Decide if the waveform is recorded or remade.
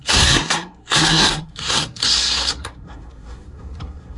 remade